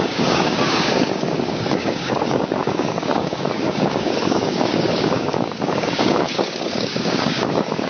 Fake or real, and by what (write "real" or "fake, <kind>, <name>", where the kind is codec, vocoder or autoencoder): fake, codec, DAC